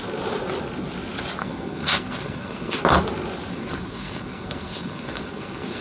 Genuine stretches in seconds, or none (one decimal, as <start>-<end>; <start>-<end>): 0.0-1.4; 2.8-3.5